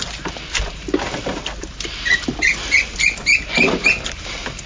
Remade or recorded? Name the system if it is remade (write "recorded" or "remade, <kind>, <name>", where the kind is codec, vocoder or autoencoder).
recorded